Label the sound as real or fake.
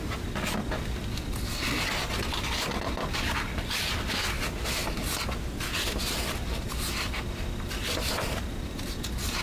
real